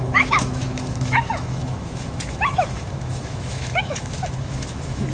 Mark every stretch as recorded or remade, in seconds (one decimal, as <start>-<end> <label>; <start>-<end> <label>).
0.0-5.1 remade